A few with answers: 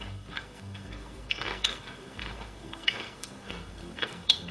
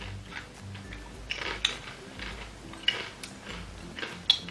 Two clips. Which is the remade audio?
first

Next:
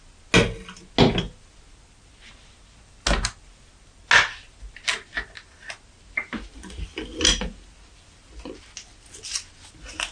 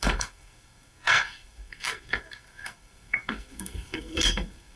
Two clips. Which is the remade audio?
second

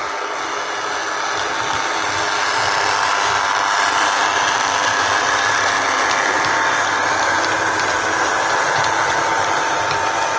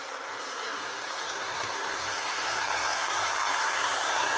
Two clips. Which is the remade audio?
second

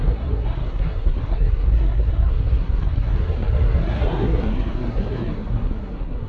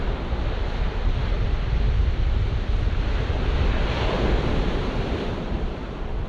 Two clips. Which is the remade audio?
first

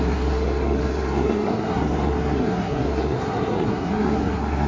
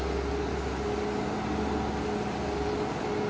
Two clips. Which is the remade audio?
first